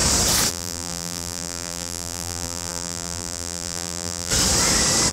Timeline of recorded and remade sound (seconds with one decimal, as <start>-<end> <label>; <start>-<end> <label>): 0.0-0.5 recorded; 0.5-4.3 remade; 4.3-5.1 recorded